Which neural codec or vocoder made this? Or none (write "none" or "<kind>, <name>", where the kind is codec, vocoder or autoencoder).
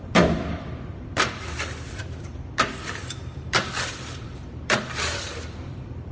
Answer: vocoder, BigVGAN v2